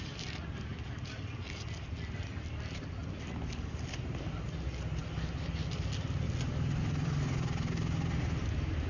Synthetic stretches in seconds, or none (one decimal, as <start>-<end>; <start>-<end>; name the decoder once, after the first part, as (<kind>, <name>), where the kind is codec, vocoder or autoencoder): none